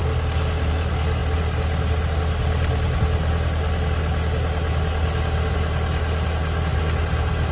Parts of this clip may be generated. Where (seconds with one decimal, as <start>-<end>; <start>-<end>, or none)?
none